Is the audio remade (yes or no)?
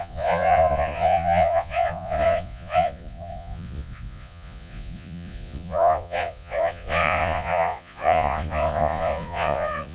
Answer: yes